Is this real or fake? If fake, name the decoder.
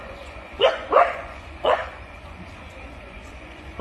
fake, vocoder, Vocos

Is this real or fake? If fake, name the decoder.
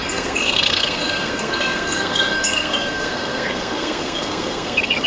fake, codec, SNAC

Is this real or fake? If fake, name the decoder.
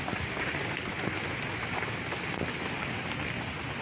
real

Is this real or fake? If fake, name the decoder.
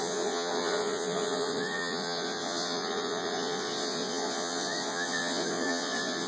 fake, vocoder, Vocos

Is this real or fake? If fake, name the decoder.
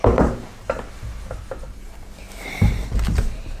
fake, vocoder, BigVGAN v2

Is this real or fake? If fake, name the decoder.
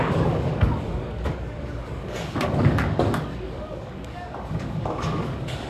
fake, codec, DAC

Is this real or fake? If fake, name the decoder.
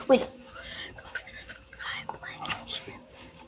fake, codec, DAC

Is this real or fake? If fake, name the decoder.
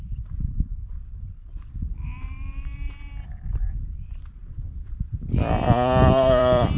fake, vocoder, BigVGAN v2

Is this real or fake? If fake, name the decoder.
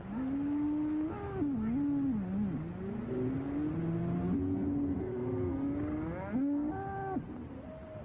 real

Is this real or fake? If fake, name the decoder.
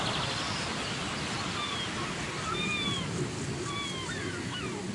real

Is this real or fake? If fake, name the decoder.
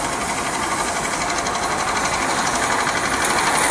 real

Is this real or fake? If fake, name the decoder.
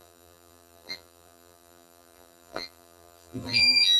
fake, vocoder, BigVGAN v2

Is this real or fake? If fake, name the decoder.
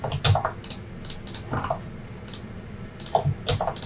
real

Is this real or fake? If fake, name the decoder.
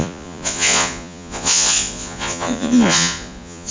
fake, vocoder, Vocos